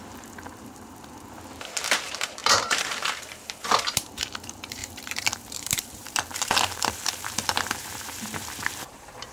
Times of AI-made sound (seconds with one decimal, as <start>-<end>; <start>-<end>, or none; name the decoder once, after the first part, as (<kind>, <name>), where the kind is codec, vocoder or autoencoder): 0.0-9.3 (vocoder, BigVGAN v2)